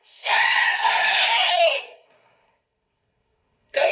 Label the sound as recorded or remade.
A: remade